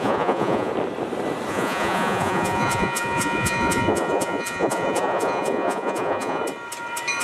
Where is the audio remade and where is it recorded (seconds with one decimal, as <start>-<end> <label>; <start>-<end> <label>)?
0.0-0.7 remade; 0.7-1.5 recorded; 1.5-6.4 remade; 6.4-7.2 recorded